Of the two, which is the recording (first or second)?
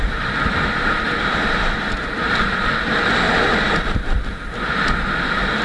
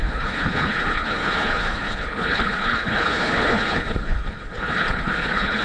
first